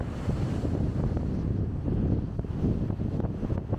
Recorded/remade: recorded